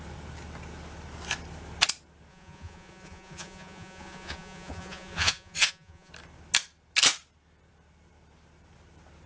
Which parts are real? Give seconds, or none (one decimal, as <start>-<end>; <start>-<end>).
0.0-2.3; 6.1-9.3